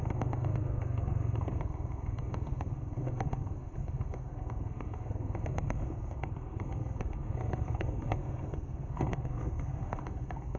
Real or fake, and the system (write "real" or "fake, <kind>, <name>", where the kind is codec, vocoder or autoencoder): fake, codec, SNAC